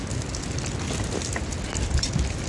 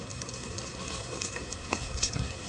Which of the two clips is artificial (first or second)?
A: second